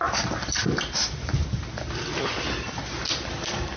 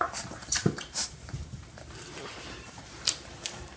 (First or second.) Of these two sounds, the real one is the first